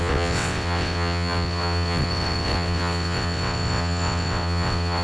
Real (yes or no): no